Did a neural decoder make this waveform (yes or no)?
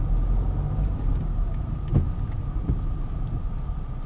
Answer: no